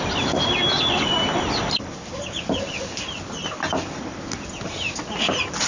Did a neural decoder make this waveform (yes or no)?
no